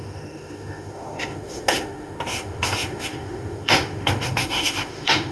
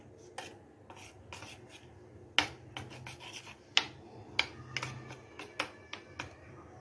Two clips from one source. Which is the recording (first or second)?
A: second